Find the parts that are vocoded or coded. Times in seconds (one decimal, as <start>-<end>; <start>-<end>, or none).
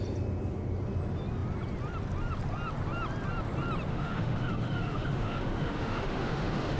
3.9-6.8